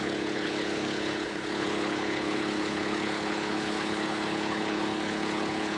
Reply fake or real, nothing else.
fake